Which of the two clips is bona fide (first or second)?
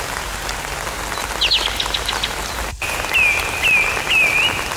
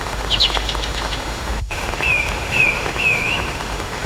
first